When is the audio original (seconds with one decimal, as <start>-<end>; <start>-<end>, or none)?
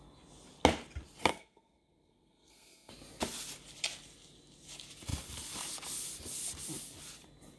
0.0-1.3; 2.9-7.6